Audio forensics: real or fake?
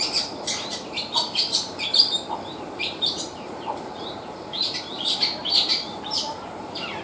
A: fake